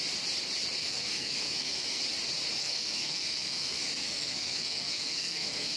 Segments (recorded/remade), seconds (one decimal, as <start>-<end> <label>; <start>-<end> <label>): 0.0-0.8 recorded; 0.8-2.0 remade; 2.0-2.6 recorded; 2.6-5.8 remade